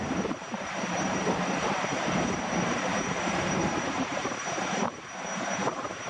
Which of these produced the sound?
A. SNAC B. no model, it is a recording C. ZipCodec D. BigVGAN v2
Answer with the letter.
D